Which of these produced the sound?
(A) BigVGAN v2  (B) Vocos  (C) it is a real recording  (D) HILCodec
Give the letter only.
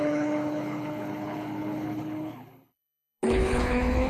D